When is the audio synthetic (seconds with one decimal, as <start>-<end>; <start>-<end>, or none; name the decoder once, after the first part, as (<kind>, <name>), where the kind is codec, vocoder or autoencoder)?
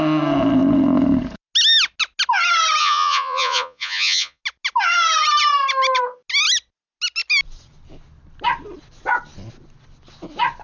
2.8-4.4 (vocoder, Vocos)